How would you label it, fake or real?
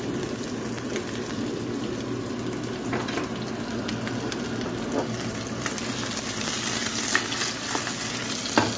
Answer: real